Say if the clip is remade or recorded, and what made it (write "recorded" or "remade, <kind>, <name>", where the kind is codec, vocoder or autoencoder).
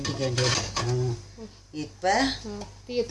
recorded